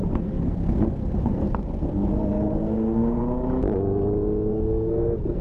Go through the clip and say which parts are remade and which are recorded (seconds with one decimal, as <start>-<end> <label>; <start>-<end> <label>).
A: 0.0-3.2 remade; 3.2-4.5 recorded; 4.5-5.4 remade